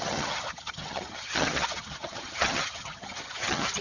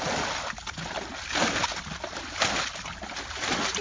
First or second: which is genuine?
second